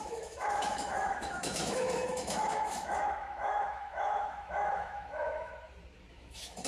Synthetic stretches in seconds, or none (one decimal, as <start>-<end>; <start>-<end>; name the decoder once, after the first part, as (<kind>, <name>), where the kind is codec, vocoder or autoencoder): 0.0-5.5 (autoencoder, DAC-VAE); 6.1-6.7